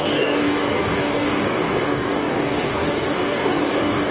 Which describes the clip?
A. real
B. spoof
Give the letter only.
B